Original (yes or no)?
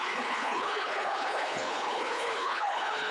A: no